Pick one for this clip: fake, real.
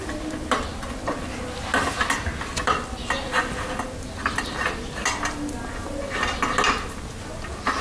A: real